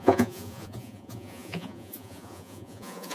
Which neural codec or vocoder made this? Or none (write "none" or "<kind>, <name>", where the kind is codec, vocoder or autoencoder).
vocoder, Vocos